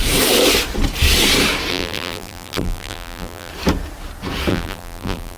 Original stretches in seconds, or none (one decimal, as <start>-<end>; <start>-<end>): 0.0-1.7; 3.5-4.5